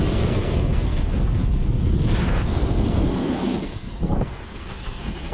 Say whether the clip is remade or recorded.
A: remade